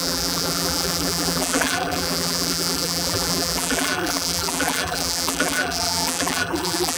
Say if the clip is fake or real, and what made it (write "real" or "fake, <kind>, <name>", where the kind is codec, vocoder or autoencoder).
fake, vocoder, BigVGAN v2